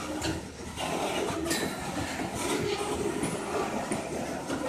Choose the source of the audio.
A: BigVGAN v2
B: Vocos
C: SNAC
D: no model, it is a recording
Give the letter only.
D